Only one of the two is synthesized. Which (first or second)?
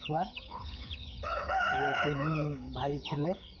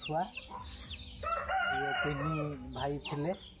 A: first